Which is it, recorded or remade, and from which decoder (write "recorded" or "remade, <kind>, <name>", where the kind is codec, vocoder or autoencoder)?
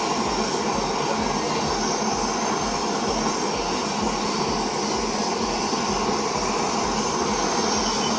recorded